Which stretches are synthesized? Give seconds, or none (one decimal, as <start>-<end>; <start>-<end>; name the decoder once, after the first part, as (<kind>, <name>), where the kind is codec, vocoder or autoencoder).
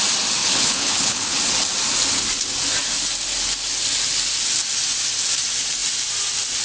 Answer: 0.4-1.4 (codec, HILCodec)